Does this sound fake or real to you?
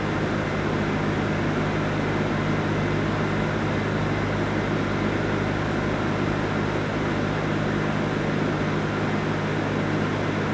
real